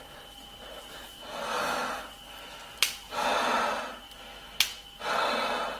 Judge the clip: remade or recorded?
recorded